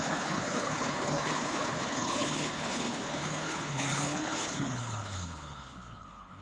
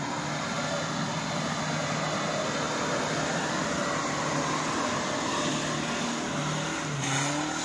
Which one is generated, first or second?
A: first